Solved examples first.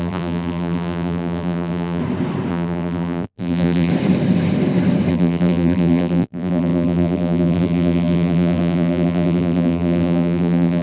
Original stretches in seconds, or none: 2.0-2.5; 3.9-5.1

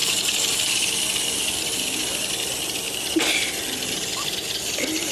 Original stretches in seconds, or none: 3.1-5.1